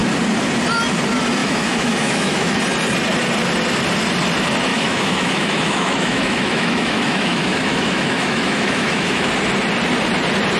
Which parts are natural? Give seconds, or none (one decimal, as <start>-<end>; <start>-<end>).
0.0-1.4; 2.6-4.7; 9.3-10.6